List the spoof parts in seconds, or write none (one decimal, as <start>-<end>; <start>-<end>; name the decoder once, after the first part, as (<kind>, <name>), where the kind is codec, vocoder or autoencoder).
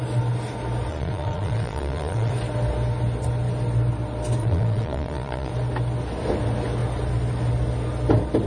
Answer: 0.9-2.3 (vocoder, Vocos); 4.4-5.5